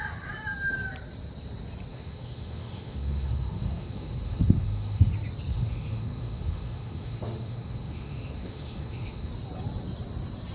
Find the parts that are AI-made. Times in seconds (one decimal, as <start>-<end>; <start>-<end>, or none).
1.9-5.1; 5.5-9.3